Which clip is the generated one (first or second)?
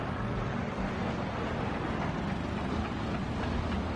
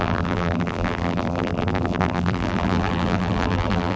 second